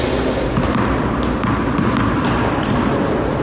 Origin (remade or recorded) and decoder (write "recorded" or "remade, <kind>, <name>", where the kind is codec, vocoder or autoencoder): recorded